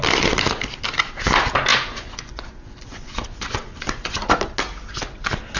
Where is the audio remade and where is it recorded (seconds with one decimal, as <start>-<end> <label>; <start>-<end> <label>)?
0.0-1.7 recorded; 1.7-4.4 remade; 4.4-5.6 recorded